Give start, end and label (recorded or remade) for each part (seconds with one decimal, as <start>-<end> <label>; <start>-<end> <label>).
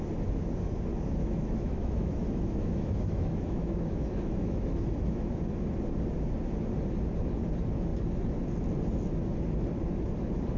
0.0-1.2 recorded; 1.2-5.3 remade; 5.3-10.6 recorded